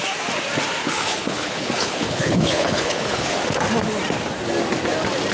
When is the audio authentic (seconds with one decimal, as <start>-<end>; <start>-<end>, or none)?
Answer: 0.0-0.8; 3.3-5.3